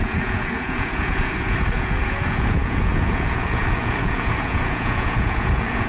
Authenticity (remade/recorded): remade